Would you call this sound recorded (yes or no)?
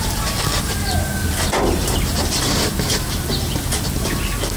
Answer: yes